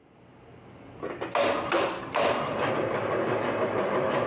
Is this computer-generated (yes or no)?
no